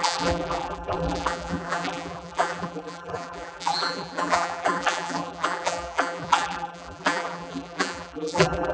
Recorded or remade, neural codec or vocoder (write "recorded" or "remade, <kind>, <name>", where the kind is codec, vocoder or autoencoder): remade, vocoder, BigVGAN v2